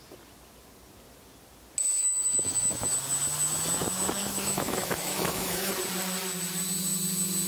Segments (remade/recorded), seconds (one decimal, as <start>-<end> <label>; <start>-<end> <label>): 0.0-2.0 recorded; 2.0-2.9 remade; 2.9-4.2 recorded; 4.2-5.7 remade; 5.7-7.5 recorded